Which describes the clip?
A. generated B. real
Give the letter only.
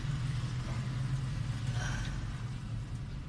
B